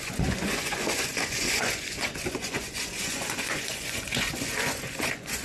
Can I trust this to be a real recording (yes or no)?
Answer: no